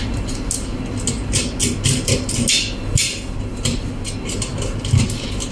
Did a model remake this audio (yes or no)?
no